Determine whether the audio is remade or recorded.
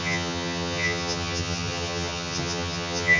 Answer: remade